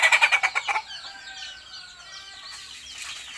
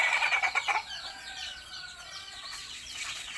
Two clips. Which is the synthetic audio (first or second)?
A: second